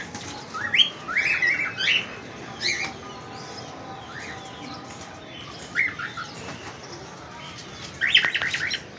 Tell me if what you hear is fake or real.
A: real